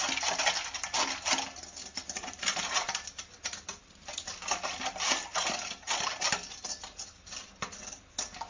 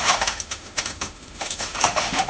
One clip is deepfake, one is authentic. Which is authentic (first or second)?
first